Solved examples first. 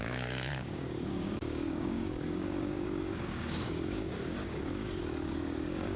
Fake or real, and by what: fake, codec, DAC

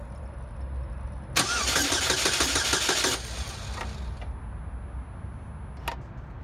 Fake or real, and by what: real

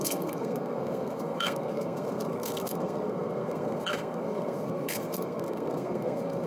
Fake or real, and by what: fake, codec, SNAC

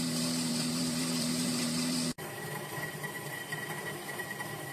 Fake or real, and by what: fake, vocoder, BigVGAN v2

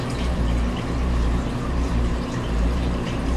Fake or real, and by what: fake, vocoder, BigVGAN v2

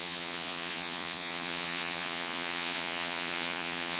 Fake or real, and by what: fake, vocoder, Vocos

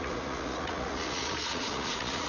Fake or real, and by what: fake, vocoder, Vocos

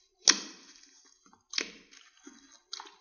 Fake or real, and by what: real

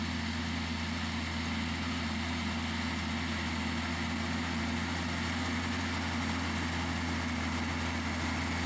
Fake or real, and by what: real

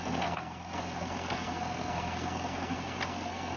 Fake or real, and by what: fake, codec, SNAC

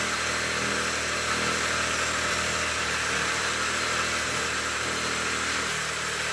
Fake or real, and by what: fake, vocoder, BigVGAN v2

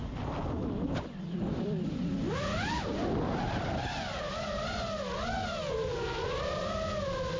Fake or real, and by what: real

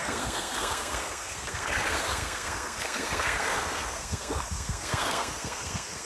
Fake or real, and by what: fake, codec, SNAC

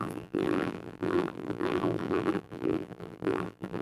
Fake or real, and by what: fake, vocoder, BigVGAN v2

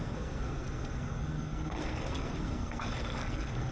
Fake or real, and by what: fake, codec, SNAC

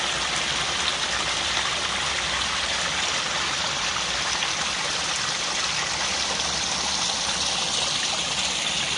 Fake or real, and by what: real